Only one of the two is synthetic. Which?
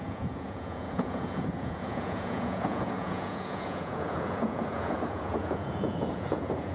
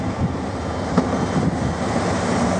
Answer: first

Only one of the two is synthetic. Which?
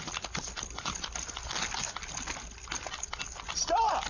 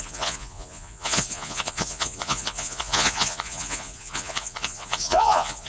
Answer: second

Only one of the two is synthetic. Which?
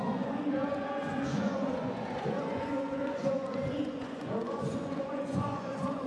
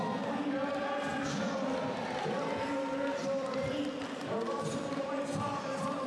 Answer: first